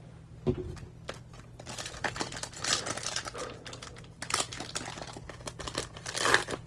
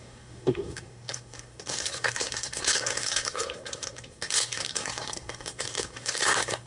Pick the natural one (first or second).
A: first